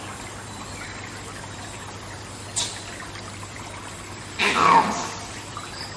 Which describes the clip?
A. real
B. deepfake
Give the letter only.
A